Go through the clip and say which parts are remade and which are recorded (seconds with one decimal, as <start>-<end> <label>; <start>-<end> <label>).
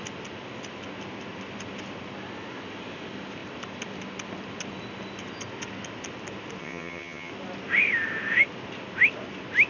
0.0-6.6 recorded; 6.6-7.3 remade; 7.3-9.7 recorded